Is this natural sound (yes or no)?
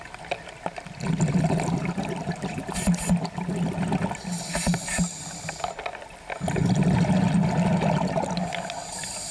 yes